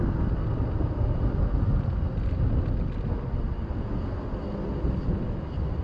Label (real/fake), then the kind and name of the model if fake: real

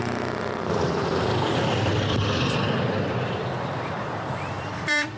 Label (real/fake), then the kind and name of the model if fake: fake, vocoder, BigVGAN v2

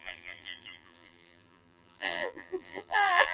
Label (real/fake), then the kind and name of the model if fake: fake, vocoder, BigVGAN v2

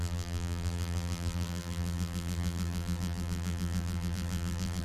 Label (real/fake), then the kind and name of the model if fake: fake, vocoder, BigVGAN v2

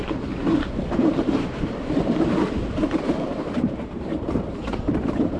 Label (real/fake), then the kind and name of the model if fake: fake, vocoder, BigVGAN v2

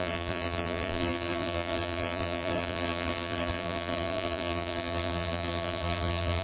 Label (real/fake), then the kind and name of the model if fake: fake, vocoder, BigVGAN v2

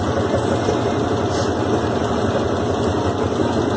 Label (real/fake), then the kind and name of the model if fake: real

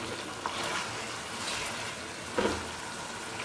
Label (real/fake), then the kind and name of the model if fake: real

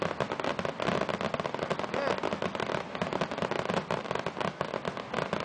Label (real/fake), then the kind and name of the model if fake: real